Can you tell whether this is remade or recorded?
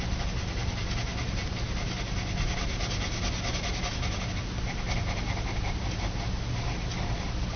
recorded